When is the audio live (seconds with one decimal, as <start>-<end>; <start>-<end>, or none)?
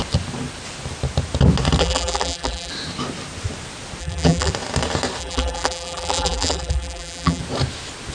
0.0-1.8; 2.7-4.0; 4.5-5.2; 7.4-8.1